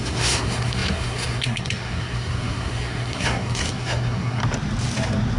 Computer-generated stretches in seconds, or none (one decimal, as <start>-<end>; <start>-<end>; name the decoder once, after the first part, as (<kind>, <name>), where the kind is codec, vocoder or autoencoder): 0.0-4.4 (codec, SNAC)